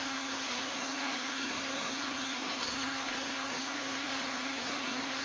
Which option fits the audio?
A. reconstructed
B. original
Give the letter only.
A